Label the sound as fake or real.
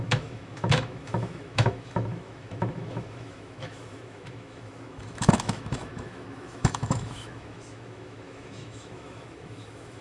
fake